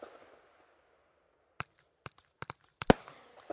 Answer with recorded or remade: recorded